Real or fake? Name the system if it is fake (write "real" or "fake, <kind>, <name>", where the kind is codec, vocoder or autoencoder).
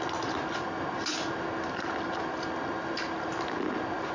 real